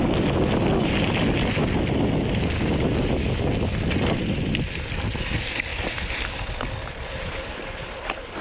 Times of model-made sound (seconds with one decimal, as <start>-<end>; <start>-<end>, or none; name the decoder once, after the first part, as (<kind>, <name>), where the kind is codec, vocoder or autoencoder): none